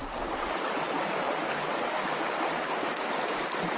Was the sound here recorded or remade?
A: recorded